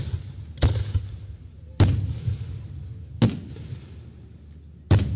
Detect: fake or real real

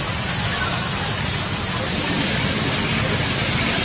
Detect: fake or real real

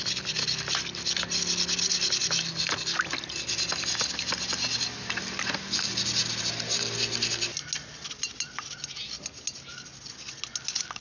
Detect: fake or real real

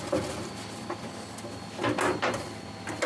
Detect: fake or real real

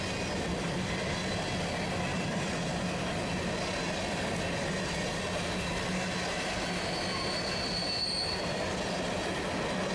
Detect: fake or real real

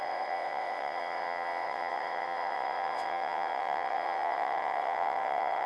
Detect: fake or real fake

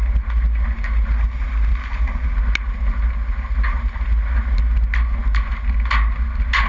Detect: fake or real real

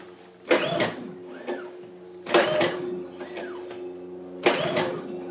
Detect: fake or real real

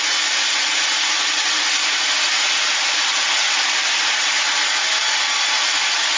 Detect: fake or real real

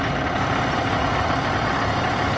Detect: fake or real real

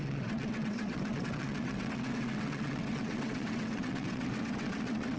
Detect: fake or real fake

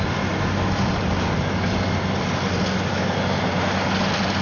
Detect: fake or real real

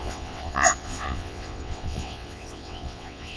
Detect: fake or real fake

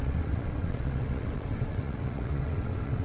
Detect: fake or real fake